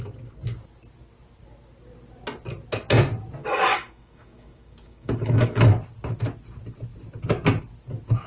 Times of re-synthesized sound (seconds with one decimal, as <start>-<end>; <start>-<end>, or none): 3.4-5.6